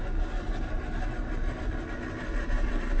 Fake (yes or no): no